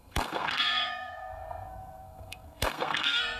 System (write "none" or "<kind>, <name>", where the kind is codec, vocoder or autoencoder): codec, SNAC